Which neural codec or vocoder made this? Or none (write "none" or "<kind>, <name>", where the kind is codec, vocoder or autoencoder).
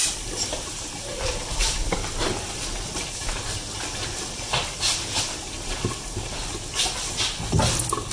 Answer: none